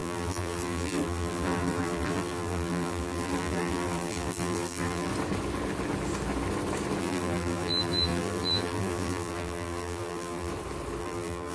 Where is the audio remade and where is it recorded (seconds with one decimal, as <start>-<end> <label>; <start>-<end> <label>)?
0.0-5.1 remade; 5.1-7.0 recorded; 7.0-10.5 remade; 10.5-11.0 recorded; 11.0-11.5 remade